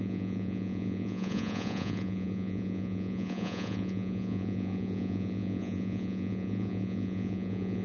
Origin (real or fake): fake